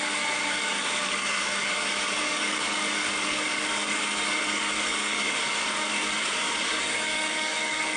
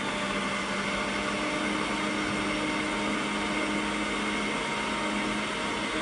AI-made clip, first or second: first